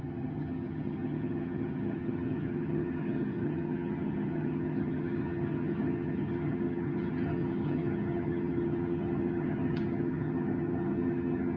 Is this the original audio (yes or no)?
no